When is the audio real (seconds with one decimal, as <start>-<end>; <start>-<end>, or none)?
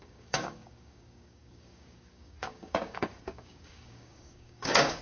none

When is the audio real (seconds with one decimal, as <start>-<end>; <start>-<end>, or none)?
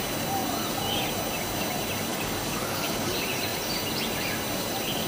0.0-2.1; 3.1-5.1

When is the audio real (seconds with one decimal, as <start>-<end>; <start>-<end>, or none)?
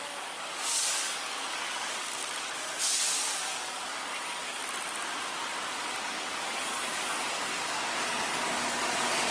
2.2-2.8; 4.6-6.0